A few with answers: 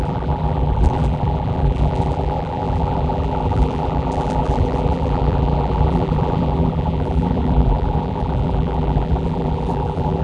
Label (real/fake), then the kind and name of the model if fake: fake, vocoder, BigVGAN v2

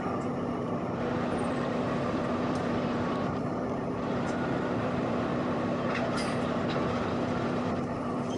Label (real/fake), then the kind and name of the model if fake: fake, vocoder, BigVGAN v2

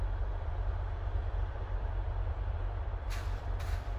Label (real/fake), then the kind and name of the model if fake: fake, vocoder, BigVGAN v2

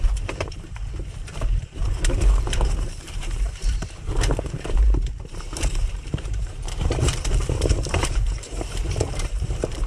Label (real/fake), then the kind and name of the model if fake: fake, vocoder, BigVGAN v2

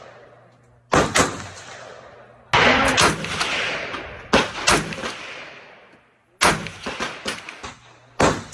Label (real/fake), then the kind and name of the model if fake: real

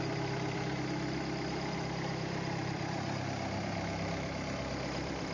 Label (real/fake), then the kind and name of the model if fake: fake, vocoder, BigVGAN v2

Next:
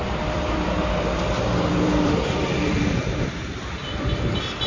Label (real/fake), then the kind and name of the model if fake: fake, vocoder, BigVGAN v2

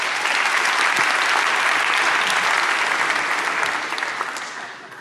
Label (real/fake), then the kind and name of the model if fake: real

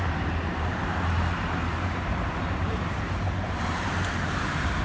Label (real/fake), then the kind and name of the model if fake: fake, vocoder, BigVGAN v2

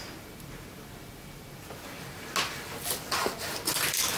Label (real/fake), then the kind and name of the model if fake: real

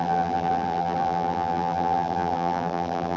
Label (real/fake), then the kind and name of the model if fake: fake, vocoder, BigVGAN v2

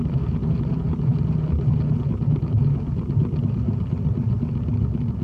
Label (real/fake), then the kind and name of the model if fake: real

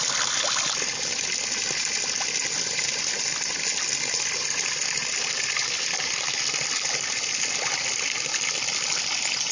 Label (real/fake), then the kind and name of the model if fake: real